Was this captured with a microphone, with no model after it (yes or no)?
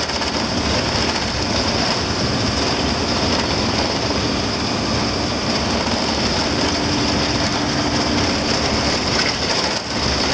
yes